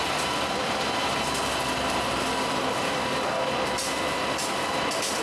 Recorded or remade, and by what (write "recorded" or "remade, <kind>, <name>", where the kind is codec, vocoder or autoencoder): recorded